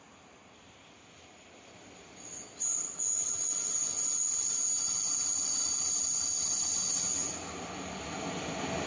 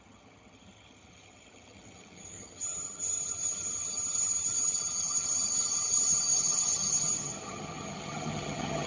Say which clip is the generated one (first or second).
second